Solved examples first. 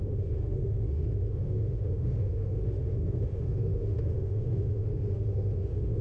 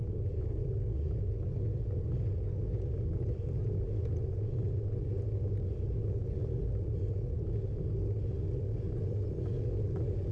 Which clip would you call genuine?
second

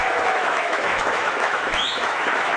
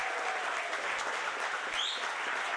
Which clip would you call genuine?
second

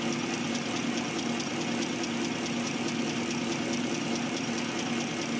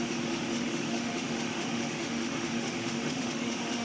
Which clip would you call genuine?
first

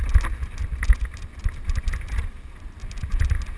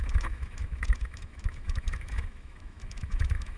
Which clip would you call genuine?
first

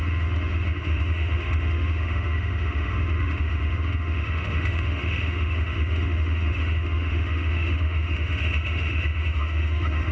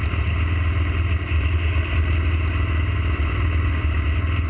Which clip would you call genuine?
second